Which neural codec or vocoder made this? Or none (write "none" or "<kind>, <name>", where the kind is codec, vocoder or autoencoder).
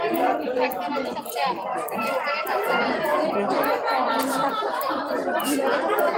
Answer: vocoder, BigVGAN v2